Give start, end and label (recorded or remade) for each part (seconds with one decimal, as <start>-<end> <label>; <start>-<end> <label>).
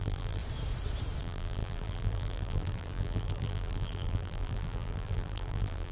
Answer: 0.0-0.4 remade; 0.4-1.2 recorded; 1.2-5.9 remade